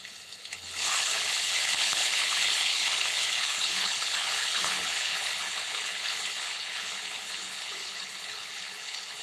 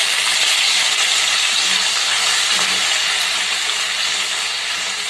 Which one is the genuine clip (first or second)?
second